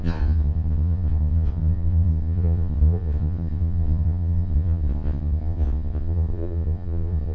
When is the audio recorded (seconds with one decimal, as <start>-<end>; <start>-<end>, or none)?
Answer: none